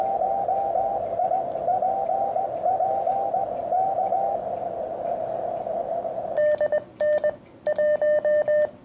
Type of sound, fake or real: real